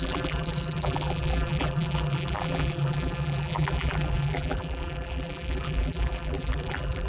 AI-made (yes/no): yes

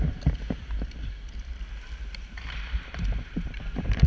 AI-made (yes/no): yes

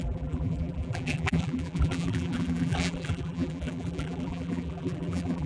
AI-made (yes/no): yes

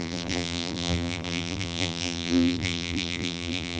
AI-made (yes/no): yes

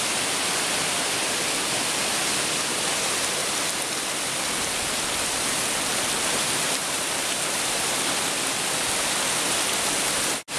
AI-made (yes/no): no